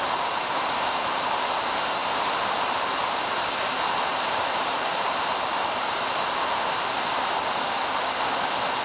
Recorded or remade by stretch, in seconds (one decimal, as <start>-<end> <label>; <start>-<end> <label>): 0.0-2.0 recorded; 2.0-3.6 remade; 3.6-4.1 recorded; 4.1-8.4 remade; 8.4-8.8 recorded